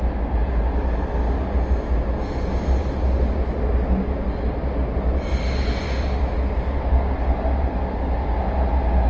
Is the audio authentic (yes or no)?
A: yes